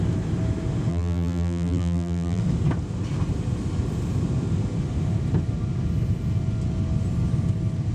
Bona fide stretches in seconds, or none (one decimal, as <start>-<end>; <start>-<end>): 0.0-0.9; 2.4-7.9

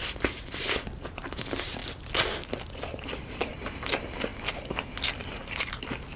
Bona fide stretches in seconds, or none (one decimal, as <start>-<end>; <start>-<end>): 1.8-2.7; 4.3-5.1

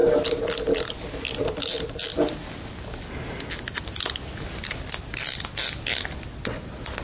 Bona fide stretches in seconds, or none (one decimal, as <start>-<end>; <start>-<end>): 0.0-7.0

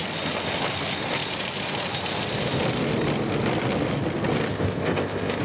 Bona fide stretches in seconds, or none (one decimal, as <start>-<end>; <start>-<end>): 0.0-4.5

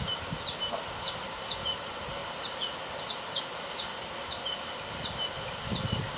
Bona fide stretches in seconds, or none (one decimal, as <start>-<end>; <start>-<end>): 0.0-6.2

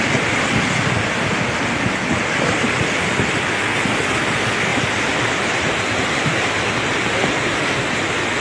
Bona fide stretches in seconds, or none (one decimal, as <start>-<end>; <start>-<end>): 0.0-4.7; 6.9-8.4